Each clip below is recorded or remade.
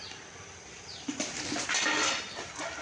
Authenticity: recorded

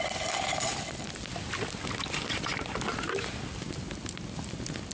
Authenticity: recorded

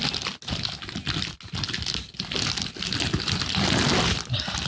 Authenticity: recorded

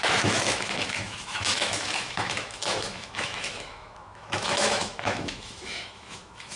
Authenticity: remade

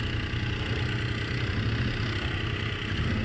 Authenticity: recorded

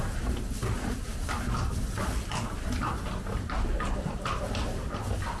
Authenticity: recorded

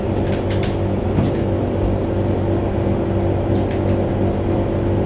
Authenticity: recorded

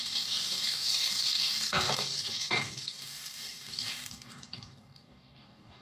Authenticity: remade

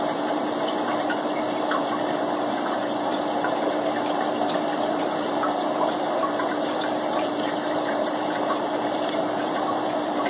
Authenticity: remade